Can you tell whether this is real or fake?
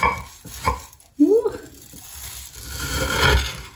real